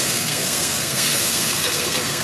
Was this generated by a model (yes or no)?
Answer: yes